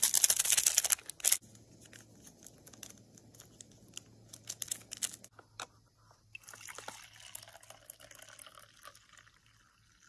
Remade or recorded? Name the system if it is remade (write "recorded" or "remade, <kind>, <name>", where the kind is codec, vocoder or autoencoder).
recorded